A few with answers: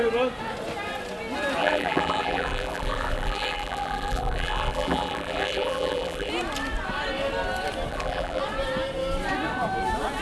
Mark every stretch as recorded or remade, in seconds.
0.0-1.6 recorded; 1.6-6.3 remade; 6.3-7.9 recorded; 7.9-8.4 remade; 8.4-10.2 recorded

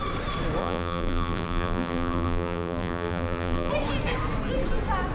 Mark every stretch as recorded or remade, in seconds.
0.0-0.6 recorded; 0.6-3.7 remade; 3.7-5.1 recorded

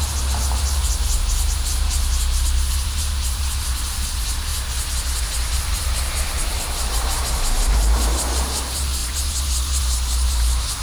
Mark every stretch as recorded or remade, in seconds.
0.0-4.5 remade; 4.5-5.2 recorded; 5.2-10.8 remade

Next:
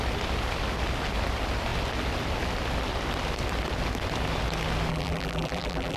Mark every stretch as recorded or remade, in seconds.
0.0-4.9 recorded; 4.9-6.0 remade

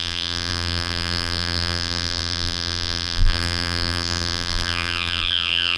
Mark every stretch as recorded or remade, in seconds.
0.0-5.8 remade

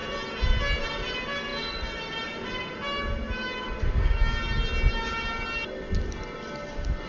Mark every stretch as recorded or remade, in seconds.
0.0-7.1 recorded